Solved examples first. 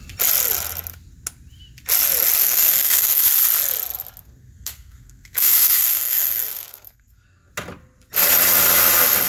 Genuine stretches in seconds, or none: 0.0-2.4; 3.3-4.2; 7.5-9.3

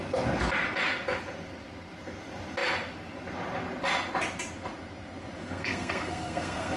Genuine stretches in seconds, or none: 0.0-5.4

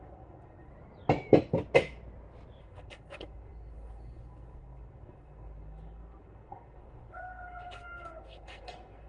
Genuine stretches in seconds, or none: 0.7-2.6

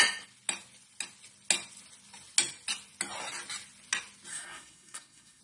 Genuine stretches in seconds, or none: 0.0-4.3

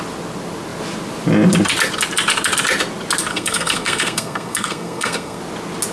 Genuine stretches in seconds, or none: 0.0-3.3; 5.4-5.9